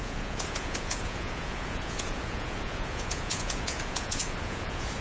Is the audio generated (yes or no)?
yes